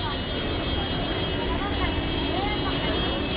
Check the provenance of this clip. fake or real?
real